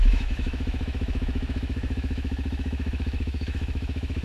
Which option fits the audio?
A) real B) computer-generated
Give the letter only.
B